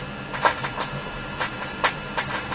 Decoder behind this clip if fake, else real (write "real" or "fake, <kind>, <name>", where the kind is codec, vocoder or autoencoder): fake, vocoder, BigVGAN v2